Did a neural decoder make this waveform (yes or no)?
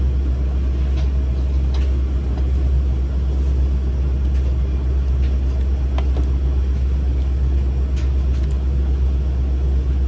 no